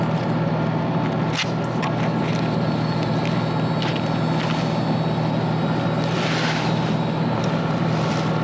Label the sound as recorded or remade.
recorded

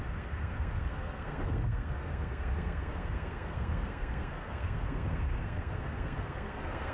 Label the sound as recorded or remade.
remade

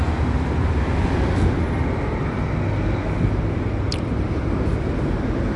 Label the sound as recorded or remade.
recorded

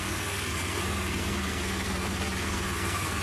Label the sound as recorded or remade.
remade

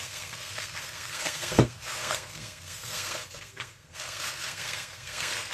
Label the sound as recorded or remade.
remade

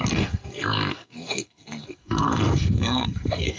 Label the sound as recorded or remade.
remade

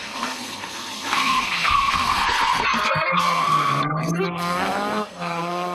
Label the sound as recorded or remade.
remade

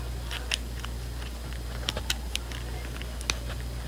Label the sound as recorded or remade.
recorded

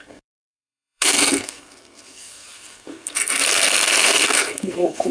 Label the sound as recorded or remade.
remade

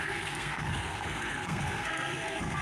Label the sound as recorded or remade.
remade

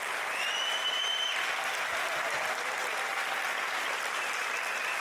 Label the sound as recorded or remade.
recorded